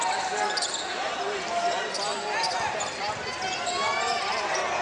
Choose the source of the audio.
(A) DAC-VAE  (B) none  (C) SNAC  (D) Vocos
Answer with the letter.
B